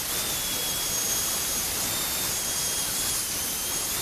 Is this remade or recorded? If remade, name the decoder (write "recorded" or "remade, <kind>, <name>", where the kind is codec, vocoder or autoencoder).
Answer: recorded